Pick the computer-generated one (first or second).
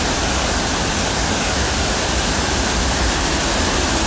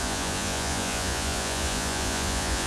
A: second